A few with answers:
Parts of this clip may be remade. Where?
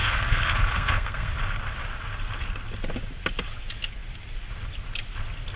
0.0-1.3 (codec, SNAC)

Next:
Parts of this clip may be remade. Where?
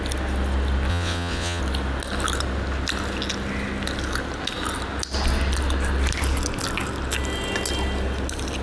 0.9-1.6 (vocoder, WaveNeXt)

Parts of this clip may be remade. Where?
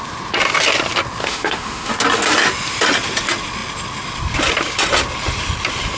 1.2-1.9 (autoencoder, DAC-VAE)